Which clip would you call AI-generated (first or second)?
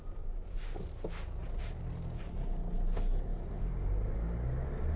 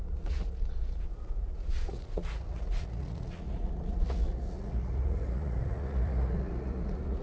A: second